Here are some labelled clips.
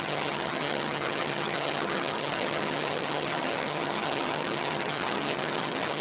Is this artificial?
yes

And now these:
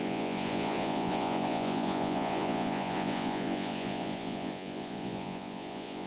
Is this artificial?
yes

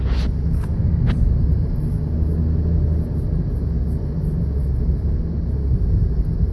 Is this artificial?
no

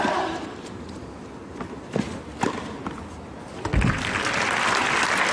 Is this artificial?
no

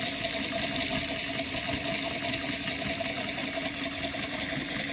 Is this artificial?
no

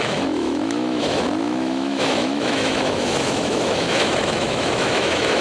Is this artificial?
yes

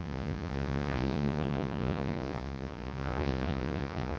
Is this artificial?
yes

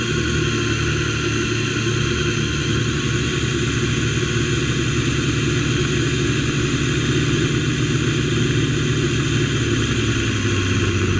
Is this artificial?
no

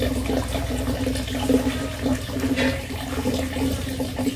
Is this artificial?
no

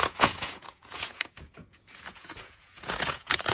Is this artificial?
yes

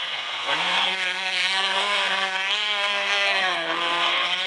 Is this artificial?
yes